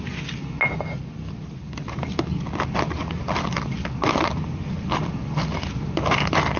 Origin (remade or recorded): recorded